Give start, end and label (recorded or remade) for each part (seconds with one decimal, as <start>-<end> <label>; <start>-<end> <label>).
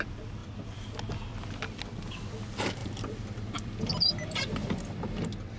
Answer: 0.0-2.8 recorded; 2.8-3.9 remade; 3.9-5.6 recorded